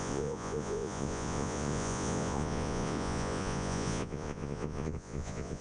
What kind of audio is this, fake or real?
fake